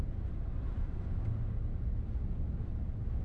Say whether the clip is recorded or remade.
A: recorded